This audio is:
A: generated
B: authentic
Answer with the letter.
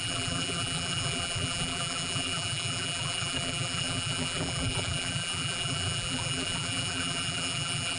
A